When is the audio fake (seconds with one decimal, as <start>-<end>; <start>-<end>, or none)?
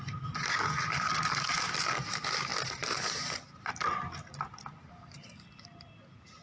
none